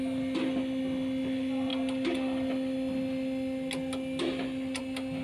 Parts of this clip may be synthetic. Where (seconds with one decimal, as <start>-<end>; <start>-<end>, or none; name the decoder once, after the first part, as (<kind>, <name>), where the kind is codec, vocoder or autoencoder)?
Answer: none